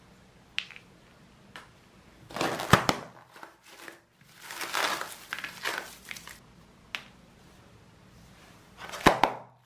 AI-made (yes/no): no